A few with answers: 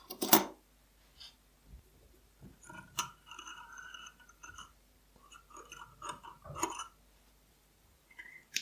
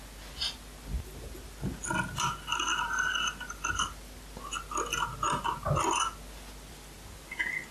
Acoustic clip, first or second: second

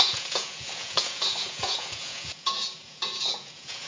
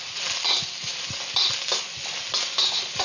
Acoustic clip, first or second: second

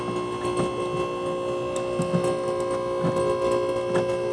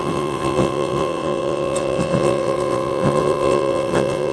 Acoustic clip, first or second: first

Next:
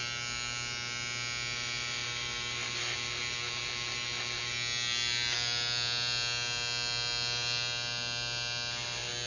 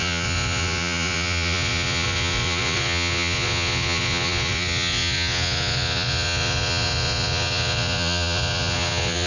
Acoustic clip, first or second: first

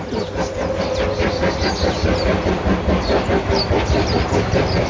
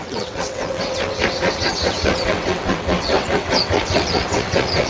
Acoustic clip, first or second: first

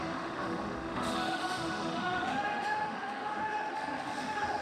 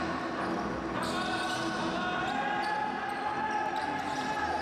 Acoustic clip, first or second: second